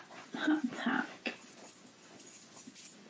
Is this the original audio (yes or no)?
no